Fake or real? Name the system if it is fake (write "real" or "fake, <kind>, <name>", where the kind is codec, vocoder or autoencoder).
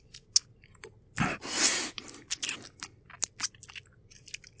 real